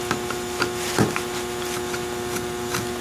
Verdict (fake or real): real